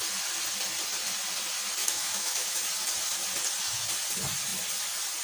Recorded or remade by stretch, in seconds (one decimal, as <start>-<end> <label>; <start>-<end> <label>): 0.0-1.8 recorded; 1.8-2.6 remade; 2.6-5.2 recorded

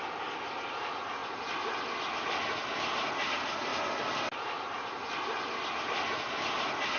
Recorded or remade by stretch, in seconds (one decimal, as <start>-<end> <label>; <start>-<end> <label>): 0.0-7.0 recorded

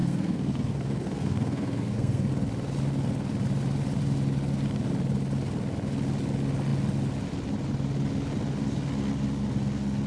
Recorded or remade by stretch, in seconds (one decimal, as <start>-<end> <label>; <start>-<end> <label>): 0.0-2.3 remade; 2.3-10.1 recorded